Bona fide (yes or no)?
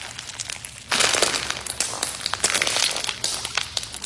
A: yes